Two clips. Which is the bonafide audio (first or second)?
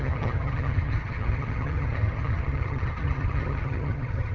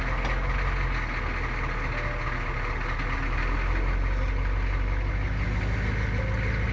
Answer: second